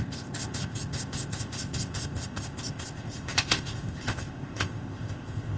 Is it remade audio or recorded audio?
remade